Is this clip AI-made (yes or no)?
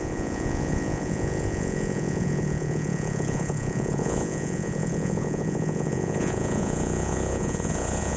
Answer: yes